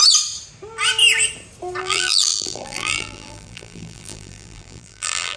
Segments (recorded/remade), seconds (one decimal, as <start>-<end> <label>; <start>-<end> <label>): 0.0-1.8 recorded; 1.8-5.4 remade